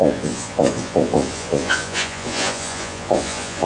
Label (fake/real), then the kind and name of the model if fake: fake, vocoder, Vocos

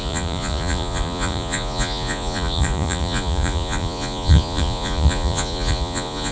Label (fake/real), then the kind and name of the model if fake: fake, vocoder, Vocos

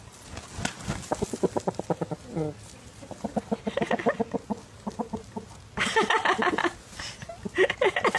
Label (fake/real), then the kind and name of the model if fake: real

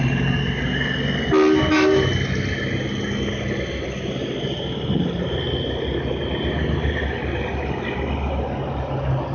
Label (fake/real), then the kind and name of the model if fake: real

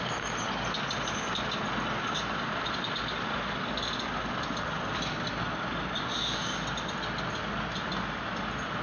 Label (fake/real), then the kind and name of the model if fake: real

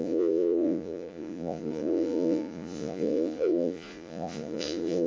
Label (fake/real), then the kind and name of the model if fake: fake, vocoder, Vocos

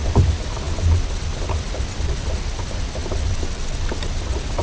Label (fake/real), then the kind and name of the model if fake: real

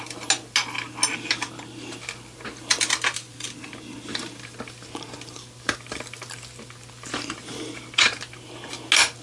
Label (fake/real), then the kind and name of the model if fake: real